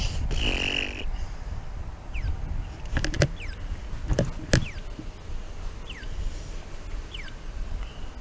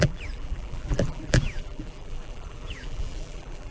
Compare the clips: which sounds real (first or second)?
first